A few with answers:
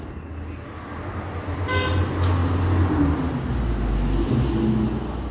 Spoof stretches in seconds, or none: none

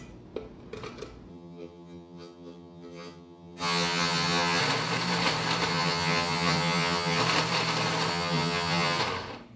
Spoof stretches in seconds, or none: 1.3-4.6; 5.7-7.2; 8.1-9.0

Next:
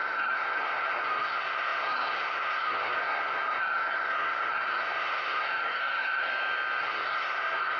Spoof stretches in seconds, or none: 0.0-6.3; 6.8-7.8